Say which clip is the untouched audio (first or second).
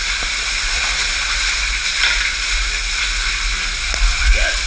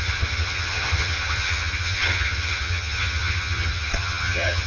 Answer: first